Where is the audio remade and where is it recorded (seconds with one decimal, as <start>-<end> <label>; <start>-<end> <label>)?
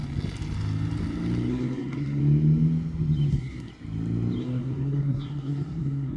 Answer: 0.0-1.5 recorded; 1.5-2.2 remade; 2.2-3.3 recorded; 3.3-3.7 remade; 3.7-4.4 recorded; 4.4-6.2 remade